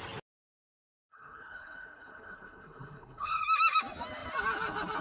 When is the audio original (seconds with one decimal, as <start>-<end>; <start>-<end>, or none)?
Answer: 0.0-1.0; 3.4-5.0